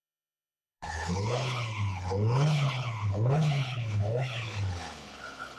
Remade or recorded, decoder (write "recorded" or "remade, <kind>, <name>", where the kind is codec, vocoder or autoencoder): remade, codec, HILCodec